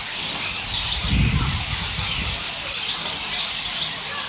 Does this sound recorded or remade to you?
recorded